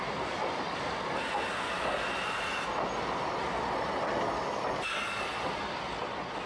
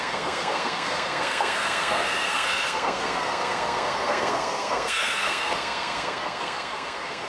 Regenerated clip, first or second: second